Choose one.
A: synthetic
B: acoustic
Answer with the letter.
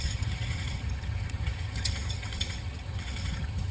A